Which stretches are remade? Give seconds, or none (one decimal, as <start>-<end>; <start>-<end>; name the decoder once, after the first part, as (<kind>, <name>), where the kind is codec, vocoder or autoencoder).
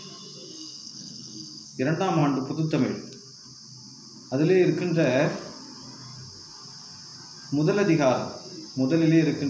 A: 0.5-1.8 (codec, SNAC)